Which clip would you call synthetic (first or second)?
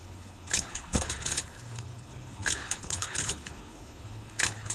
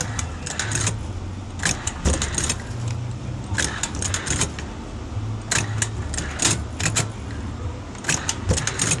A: first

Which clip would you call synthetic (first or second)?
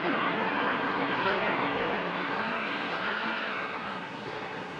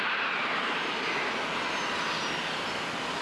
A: first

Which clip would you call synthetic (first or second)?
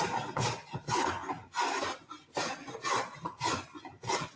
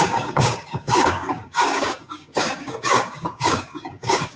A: second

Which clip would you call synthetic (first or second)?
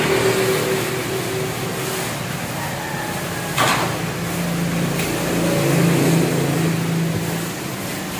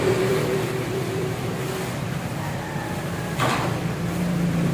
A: second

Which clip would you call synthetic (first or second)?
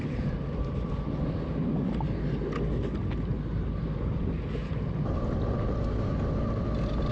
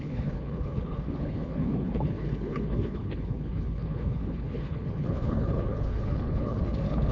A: second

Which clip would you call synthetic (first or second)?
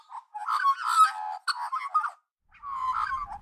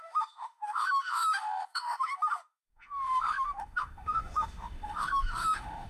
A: second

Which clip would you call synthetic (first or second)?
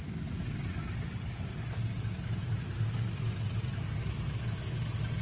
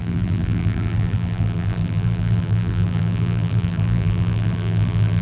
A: second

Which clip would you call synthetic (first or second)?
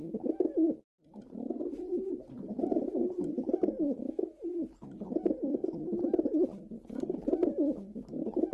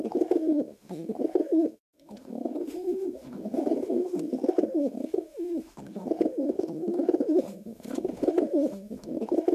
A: second